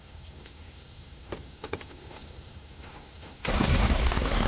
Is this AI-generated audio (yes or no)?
yes